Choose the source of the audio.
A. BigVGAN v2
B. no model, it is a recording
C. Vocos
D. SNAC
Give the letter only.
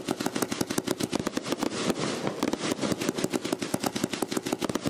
B